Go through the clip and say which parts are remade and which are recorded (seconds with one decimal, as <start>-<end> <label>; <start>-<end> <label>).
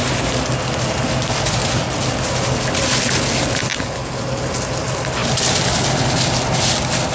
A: 0.0-7.1 recorded